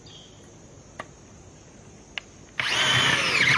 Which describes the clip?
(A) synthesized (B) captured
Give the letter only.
B